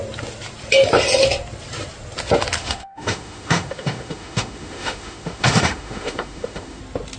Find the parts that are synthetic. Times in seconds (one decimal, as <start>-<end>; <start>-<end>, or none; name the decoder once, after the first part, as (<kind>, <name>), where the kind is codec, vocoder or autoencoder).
2.6-6.8 (autoencoder, DAC-VAE)